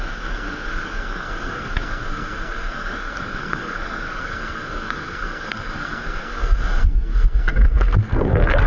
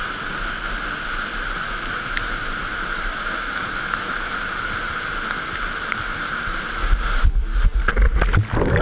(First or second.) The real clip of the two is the second